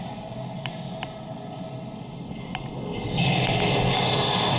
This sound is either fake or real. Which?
real